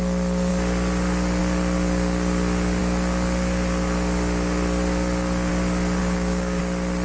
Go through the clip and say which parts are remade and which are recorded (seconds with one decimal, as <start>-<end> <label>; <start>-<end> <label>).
0.0-6.0 recorded; 6.0-6.6 remade; 6.6-7.0 recorded